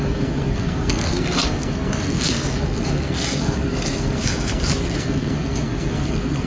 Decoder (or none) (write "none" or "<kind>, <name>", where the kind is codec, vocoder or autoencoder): codec, SNAC